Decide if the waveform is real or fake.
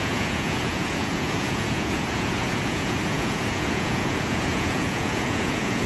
fake